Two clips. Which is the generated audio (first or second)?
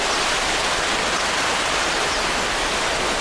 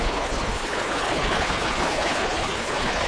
second